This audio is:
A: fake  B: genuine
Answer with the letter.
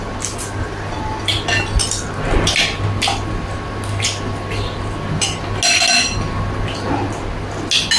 B